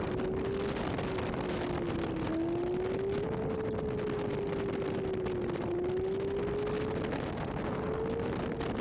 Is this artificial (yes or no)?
no